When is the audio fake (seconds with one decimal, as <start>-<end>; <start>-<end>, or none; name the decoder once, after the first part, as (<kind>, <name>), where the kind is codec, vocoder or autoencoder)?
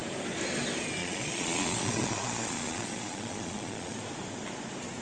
1.0-4.0 (vocoder, Vocos)